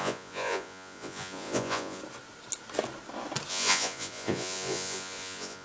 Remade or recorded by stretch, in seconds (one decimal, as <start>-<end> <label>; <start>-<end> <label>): 0.0-2.0 remade; 2.0-3.5 recorded; 3.5-5.6 remade